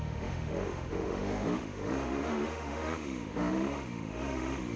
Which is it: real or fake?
fake